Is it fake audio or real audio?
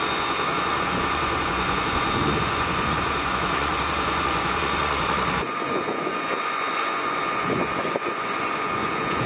fake